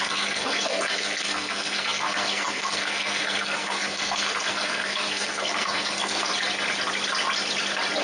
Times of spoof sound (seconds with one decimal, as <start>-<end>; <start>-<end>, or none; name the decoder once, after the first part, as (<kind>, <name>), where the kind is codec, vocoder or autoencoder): 0.0-6.3 (codec, SNAC)